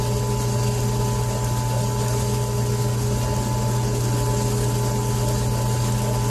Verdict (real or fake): real